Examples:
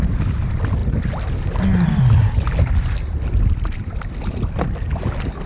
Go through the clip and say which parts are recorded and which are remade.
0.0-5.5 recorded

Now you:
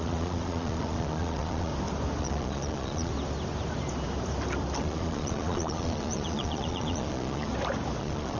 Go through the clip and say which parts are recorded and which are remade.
0.0-1.7 remade; 1.7-2.2 recorded; 2.2-3.1 remade; 3.1-4.8 recorded; 4.8-7.5 remade; 7.5-8.0 recorded; 8.0-8.4 remade

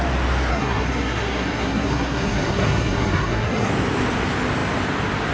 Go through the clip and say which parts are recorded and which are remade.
0.0-0.5 recorded; 0.5-3.7 remade; 3.7-5.3 recorded

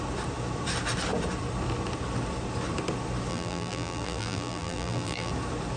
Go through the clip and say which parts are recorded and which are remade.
0.0-3.3 recorded; 3.3-5.3 remade; 5.3-5.8 recorded

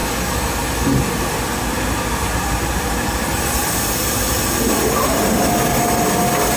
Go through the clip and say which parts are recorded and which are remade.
0.0-6.6 recorded

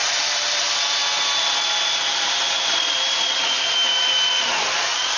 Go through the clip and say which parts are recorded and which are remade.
0.0-5.2 recorded

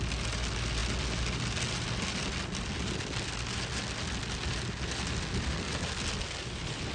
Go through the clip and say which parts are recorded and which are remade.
0.0-6.9 recorded

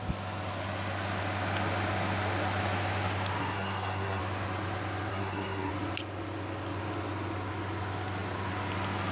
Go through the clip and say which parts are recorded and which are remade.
0.0-3.4 recorded; 3.4-4.2 remade; 4.2-5.1 recorded; 5.1-5.7 remade; 5.7-9.1 recorded